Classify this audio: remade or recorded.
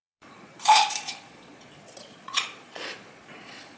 remade